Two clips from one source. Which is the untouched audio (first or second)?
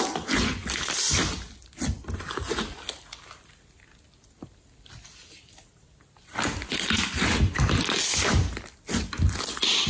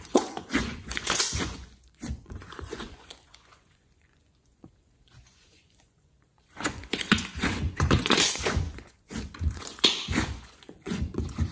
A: first